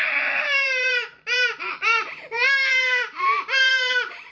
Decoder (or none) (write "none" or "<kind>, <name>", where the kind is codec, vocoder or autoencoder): vocoder, BigVGAN v2